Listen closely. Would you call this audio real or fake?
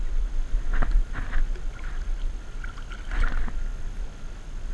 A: real